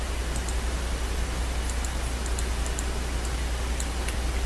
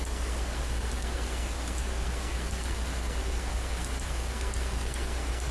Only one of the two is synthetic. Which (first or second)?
second